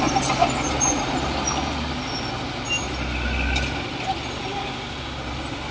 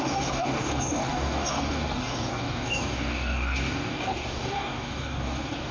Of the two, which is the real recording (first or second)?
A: first